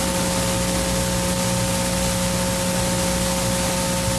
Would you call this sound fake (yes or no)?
no